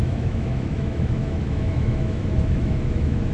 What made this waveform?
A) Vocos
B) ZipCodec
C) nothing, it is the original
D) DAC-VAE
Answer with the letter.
D